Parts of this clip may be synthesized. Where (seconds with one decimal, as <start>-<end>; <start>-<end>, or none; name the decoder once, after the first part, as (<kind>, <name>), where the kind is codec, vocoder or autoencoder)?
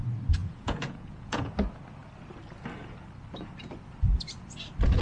0.4-1.5 (vocoder, Vocos)